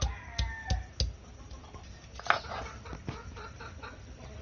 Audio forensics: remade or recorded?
recorded